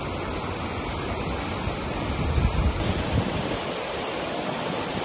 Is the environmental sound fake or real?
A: real